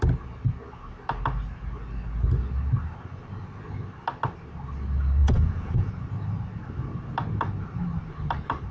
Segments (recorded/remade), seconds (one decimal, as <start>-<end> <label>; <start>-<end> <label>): 0.0-5.2 recorded; 5.2-5.9 remade; 5.9-8.7 recorded